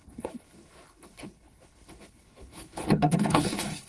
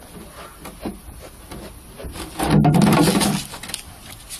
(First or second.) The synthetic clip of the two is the first